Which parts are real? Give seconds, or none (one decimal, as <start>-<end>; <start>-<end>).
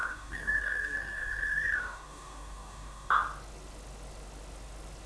3.1-5.1